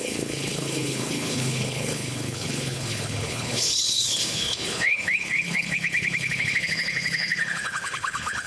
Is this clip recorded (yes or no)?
no